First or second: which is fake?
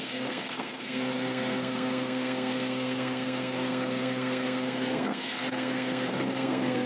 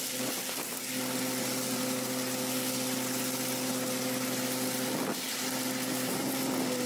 first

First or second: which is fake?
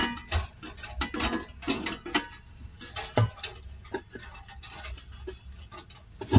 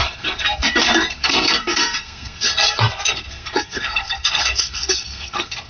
second